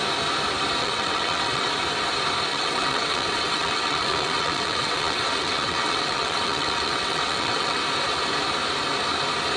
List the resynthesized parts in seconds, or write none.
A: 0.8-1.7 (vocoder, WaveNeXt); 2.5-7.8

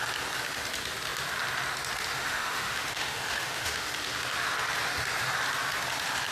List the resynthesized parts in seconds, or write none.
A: 2.2-3.9 (autoencoder, DAC-VAE)

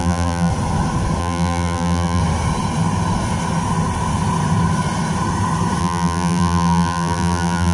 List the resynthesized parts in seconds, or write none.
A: 0.0-0.5 (vocoder, BigVGAN v2); 1.2-2.2; 5.8-7.7

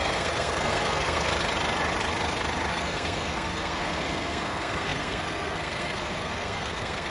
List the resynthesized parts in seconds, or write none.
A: 0.0-1.3 (codec, SNAC); 2.7-7.1